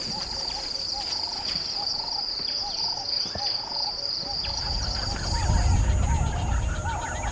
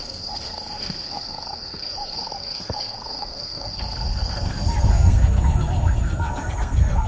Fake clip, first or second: second